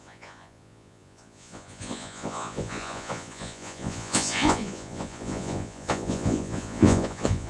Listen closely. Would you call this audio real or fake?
fake